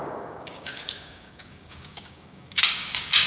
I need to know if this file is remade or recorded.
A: remade